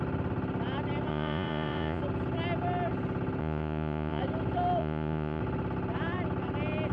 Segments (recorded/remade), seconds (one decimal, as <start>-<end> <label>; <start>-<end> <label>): 0.0-1.1 recorded; 1.1-2.0 remade; 2.0-3.4 recorded; 3.4-4.2 remade; 4.2-4.8 recorded; 4.8-5.4 remade; 5.4-6.9 recorded